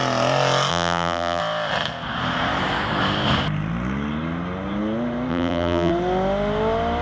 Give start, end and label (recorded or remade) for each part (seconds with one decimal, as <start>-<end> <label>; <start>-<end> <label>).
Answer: 0.0-0.7 recorded; 0.7-1.4 remade; 1.4-5.3 recorded; 5.3-5.9 remade; 5.9-7.0 recorded